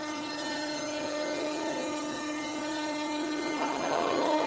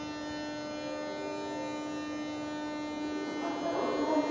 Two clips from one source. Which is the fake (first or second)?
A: first